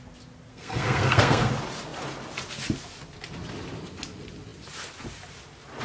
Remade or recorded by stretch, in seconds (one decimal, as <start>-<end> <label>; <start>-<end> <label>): 0.0-0.5 recorded; 0.5-1.5 remade; 1.5-5.8 recorded